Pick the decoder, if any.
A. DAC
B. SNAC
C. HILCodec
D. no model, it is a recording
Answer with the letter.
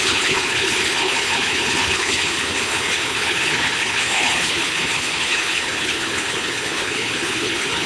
C